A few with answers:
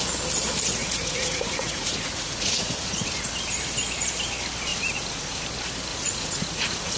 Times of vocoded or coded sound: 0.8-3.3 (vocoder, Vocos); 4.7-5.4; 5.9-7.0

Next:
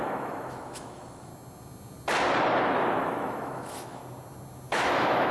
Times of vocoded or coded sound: 0.0-1.3 (autoencoder, DAC-VAE); 3.0-4.0; 4.7-5.3

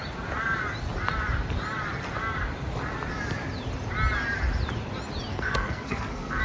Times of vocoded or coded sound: 5.3-6.4 (codec, SNAC)

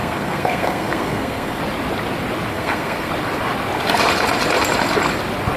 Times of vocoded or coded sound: 0.0-1.6 (codec, SNAC); 2.5-3.1

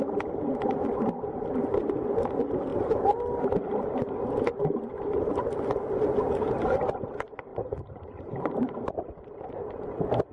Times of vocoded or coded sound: 7.5-8.9 (vocoder, BigVGAN v2)

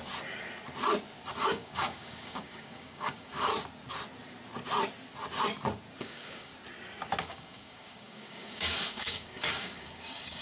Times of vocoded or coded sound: 1.4-3.5 (codec, DAC); 6.0-6.5; 7.2-10.4

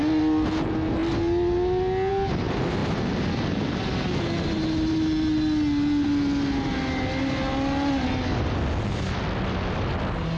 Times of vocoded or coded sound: none